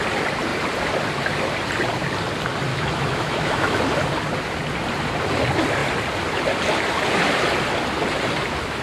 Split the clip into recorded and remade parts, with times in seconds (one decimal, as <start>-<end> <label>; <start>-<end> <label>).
0.0-2.7 recorded; 2.7-3.8 remade; 3.8-8.8 recorded